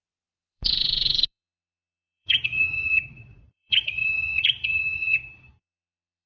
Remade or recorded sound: remade